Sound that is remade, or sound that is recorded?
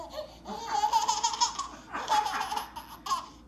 recorded